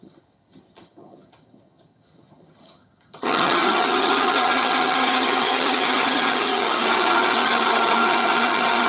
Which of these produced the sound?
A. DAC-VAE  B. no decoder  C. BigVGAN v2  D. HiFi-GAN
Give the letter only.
D